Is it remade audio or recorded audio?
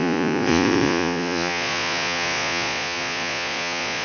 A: remade